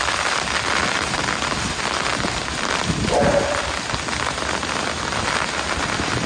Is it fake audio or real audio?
fake